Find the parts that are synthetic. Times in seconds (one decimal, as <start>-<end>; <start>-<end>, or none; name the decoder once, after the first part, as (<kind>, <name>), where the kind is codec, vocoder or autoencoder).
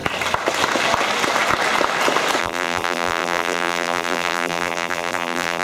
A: 2.4-5.6 (vocoder, BigVGAN v2)